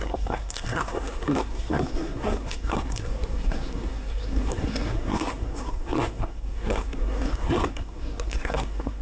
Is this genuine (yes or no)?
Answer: no